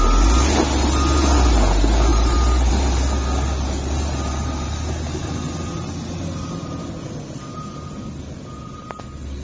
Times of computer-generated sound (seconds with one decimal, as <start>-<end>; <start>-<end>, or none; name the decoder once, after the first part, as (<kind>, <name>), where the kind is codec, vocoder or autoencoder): 2.1-2.7 (vocoder, BigVGAN v2)